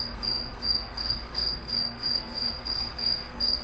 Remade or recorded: remade